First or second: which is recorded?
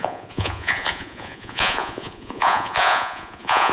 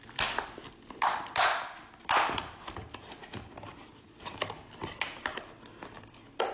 second